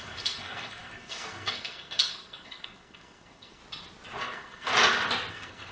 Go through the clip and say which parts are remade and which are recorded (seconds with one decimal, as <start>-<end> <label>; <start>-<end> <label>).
0.0-3.6 remade; 3.6-4.2 recorded; 4.2-4.7 remade; 4.7-5.3 recorded; 5.3-5.7 remade

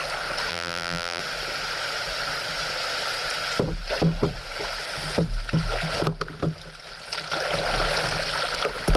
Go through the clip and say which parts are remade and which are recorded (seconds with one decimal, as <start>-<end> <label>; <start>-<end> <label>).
0.0-0.5 recorded; 0.5-1.2 remade; 1.2-9.0 recorded